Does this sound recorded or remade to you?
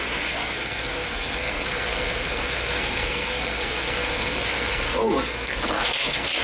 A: remade